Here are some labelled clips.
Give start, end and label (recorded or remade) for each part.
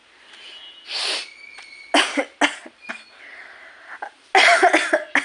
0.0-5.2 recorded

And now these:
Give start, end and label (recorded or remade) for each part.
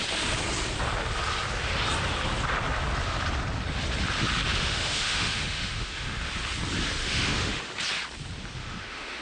0.0-4.6 recorded; 4.6-6.3 remade; 6.3-7.0 recorded; 7.0-7.6 remade; 7.6-8.6 recorded; 8.6-9.2 remade